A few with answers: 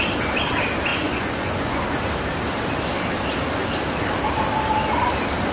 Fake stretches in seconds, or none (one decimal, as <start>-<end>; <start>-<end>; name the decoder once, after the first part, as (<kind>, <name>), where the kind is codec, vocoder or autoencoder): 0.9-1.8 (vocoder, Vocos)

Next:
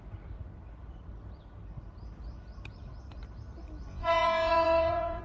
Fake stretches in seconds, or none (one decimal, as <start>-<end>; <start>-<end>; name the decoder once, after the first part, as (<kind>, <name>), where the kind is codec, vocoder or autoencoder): 3.9-5.2 (vocoder, Vocos)

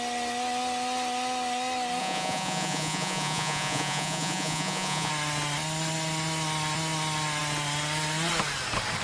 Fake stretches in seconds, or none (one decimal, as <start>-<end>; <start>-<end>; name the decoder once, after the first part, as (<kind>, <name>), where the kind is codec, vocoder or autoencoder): 2.0-5.1 (vocoder, Vocos)